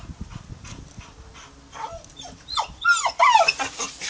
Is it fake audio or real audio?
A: real